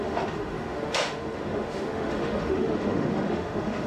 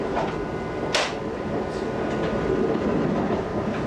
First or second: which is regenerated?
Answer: first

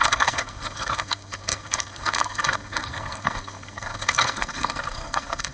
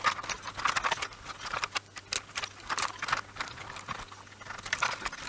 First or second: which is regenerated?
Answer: first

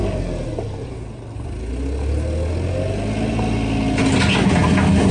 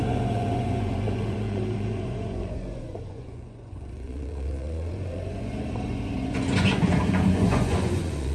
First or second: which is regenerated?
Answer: second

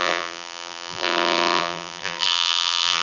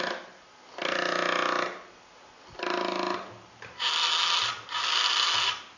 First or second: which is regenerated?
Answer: first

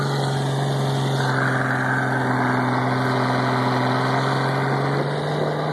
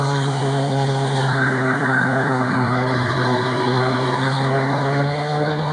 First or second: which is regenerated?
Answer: second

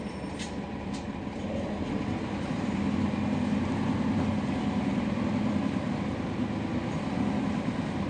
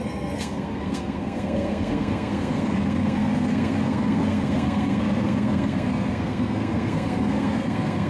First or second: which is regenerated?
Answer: second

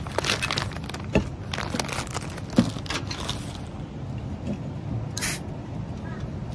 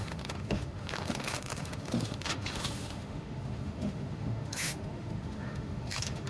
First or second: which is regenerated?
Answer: second